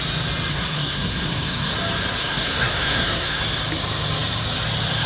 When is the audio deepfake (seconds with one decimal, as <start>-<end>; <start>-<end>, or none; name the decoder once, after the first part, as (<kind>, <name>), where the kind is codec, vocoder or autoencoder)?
0.5-1.7 (codec, SNAC); 2.2-3.4